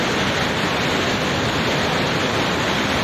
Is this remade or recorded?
recorded